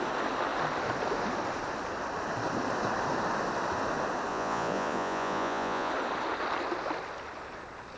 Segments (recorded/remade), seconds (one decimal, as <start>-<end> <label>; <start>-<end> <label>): 0.0-4.3 recorded; 4.3-5.9 remade; 5.9-8.0 recorded

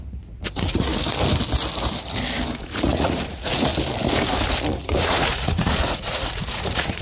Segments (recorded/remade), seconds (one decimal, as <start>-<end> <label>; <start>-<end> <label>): 0.0-0.9 remade; 0.9-2.6 recorded; 2.6-3.7 remade; 3.7-4.8 recorded; 4.8-7.0 remade

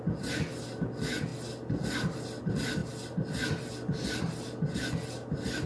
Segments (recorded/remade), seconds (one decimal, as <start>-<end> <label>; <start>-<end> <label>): 0.0-5.7 recorded